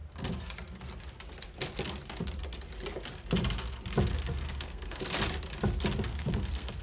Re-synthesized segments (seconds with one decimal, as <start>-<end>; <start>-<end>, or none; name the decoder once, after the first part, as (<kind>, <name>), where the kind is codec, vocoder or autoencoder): 4.1-5.0 (codec, SNAC); 6.1-6.8